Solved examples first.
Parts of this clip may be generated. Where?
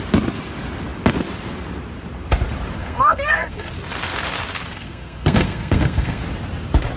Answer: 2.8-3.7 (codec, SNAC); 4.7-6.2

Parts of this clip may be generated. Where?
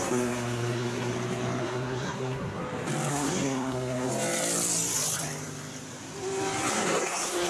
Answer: 0.0-1.1 (codec, SNAC); 1.6-2.6; 3.1-4.1; 6.7-7.5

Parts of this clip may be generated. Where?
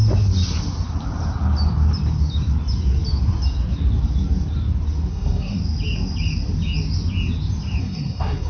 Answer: 5.1-5.6 (codec, SNAC); 7.8-8.5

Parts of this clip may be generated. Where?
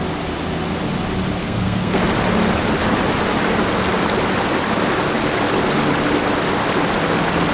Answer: 1.4-2.0 (codec, SNAC)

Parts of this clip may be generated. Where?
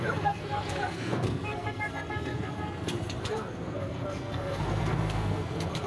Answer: 0.0-5.9 (codec, SNAC)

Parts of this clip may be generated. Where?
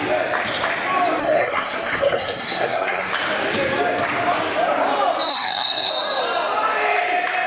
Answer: 1.2-3.1 (codec, SNAC); 5.3-5.9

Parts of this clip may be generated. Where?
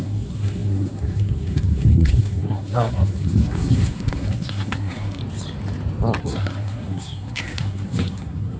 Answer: 0.0-5.2 (codec, SNAC); 6.2-8.6